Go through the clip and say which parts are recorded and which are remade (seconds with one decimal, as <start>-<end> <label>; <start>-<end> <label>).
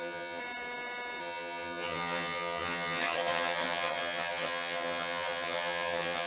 0.0-0.4 remade; 0.4-1.2 recorded; 1.2-6.3 remade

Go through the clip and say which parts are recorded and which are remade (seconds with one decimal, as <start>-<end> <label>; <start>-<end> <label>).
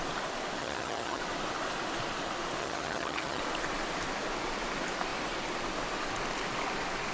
0.0-0.6 recorded; 0.6-1.2 remade; 1.2-2.6 recorded; 2.6-3.4 remade; 3.4-7.1 recorded